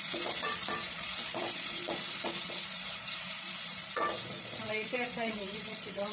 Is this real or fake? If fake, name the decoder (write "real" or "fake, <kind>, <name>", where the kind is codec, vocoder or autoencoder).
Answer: fake, vocoder, Vocos